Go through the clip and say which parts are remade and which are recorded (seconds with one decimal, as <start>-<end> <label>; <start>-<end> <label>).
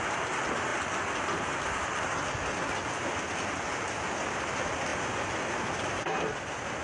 0.0-6.8 recorded